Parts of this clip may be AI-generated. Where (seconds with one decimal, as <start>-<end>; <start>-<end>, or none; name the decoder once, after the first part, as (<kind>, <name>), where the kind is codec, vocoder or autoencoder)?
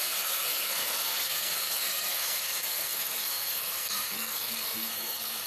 0.0-5.5 (codec, SNAC)